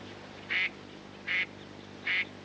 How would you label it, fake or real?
real